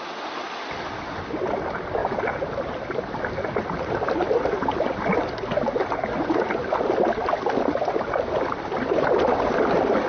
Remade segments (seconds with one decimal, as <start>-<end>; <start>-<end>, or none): none